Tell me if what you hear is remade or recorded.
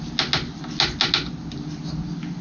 recorded